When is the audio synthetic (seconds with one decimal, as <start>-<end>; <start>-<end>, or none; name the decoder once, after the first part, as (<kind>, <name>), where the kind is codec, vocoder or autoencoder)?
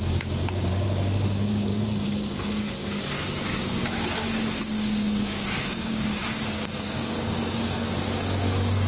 0.0-1.7 (codec, DAC); 3.1-8.9